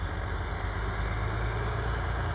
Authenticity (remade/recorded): recorded